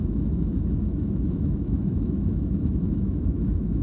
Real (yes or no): no